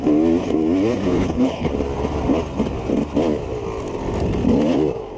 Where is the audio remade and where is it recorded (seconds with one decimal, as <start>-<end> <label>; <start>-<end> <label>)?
0.0-1.1 recorded; 1.1-1.7 remade; 1.7-5.2 recorded